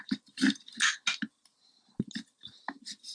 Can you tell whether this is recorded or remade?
recorded